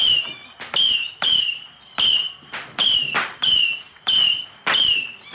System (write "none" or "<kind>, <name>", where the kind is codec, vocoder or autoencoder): none